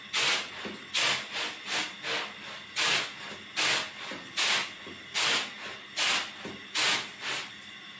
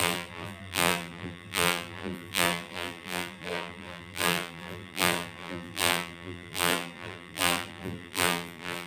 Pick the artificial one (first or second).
second